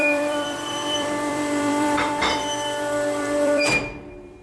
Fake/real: fake